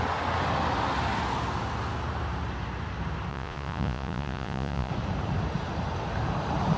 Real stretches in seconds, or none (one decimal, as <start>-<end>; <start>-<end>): 0.0-3.3; 4.9-6.8